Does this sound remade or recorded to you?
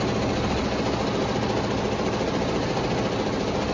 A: recorded